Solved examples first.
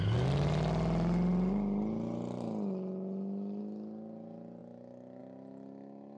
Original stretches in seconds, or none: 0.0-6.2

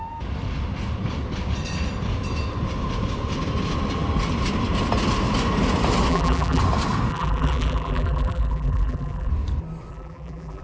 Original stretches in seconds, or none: 0.0-6.1; 6.6-7.1; 9.3-9.9

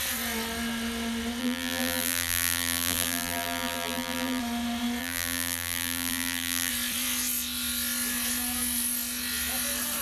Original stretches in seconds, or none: 0.0-1.4; 4.4-5.0; 6.7-10.0

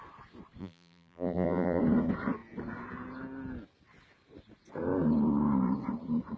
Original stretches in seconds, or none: 0.0-0.6; 1.8-6.4